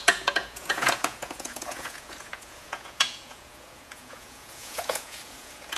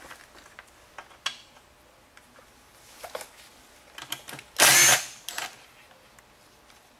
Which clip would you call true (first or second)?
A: second